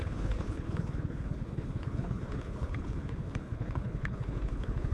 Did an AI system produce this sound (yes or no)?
yes